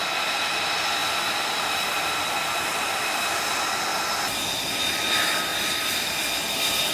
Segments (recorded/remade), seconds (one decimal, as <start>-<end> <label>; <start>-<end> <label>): 0.0-1.0 recorded; 1.0-2.3 remade; 2.3-6.9 recorded